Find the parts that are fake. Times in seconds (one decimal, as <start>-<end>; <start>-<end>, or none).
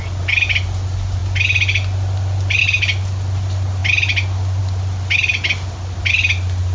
none